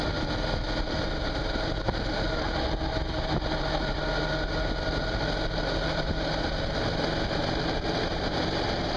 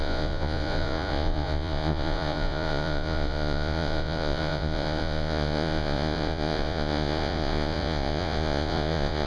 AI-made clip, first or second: second